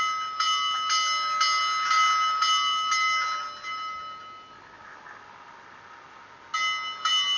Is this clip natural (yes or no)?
yes